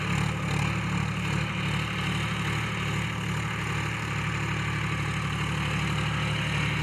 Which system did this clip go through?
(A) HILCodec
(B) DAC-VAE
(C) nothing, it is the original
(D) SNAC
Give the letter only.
C